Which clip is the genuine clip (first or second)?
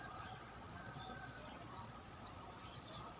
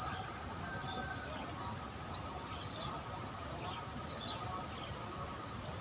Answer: second